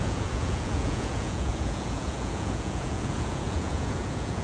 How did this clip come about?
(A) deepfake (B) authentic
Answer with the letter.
A